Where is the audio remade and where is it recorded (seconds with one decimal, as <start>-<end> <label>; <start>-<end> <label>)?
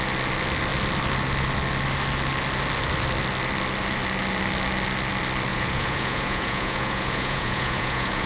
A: 0.0-5.5 recorded; 5.5-8.3 remade